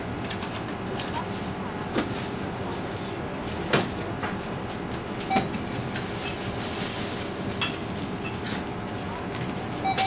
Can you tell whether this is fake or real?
real